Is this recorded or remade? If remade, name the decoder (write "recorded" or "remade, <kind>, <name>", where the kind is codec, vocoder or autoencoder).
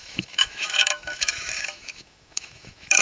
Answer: remade, autoencoder, DAC-VAE